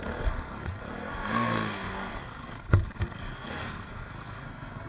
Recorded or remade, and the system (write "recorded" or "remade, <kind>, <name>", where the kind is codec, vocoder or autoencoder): remade, codec, SNAC